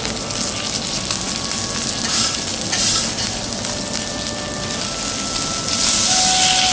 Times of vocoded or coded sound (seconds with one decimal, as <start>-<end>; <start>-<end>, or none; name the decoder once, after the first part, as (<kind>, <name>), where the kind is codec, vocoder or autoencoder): none